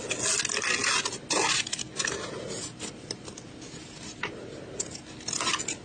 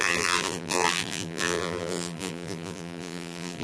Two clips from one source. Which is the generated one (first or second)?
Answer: second